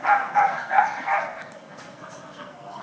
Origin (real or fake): fake